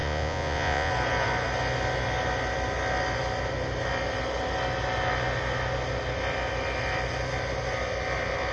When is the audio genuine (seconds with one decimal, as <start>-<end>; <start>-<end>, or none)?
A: 0.9-8.5